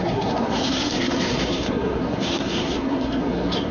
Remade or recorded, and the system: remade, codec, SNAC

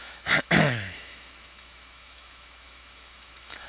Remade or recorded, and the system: remade, autoencoder, DAC-VAE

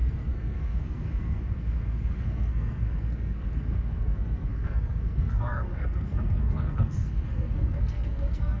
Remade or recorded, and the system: remade, codec, SNAC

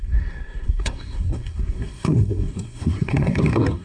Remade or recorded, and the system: remade, codec, SNAC